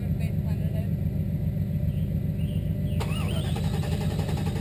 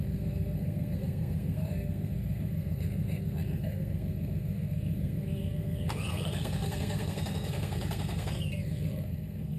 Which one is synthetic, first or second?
second